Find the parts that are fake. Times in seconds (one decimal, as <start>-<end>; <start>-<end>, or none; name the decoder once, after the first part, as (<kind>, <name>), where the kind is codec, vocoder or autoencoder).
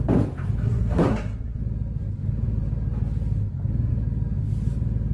0.6-1.6 (codec, SNAC)